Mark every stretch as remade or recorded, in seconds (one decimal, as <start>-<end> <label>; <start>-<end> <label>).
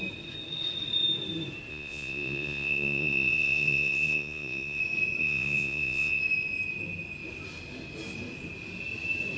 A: 0.0-1.7 recorded; 1.7-4.8 remade; 4.8-5.2 recorded; 5.2-6.2 remade; 6.2-9.4 recorded